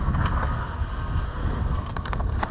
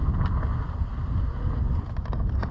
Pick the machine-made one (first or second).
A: first